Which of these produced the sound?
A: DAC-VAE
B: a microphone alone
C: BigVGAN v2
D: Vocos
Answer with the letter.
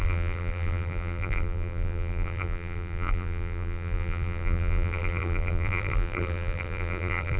C